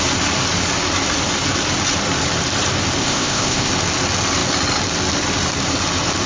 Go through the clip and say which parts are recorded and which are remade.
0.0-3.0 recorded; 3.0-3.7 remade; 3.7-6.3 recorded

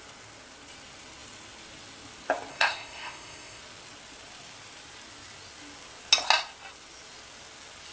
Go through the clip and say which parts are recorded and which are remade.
0.0-2.5 recorded; 2.5-3.6 remade; 3.6-7.9 recorded

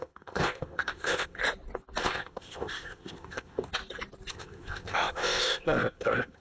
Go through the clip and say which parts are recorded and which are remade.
0.0-1.4 remade; 1.4-2.0 recorded; 2.0-3.7 remade; 3.7-4.3 recorded; 4.3-6.4 remade